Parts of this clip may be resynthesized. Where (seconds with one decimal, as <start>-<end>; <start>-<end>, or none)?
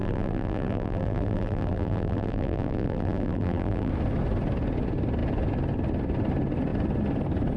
0.0-3.9